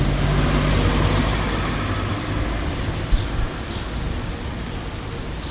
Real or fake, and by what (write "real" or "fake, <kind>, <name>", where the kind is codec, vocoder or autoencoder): real